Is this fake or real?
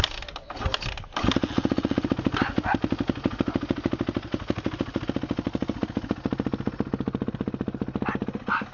real